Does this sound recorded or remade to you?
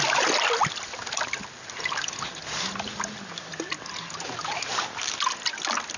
recorded